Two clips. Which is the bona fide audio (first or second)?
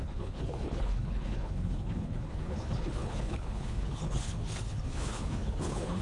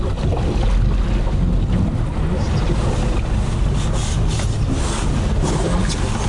second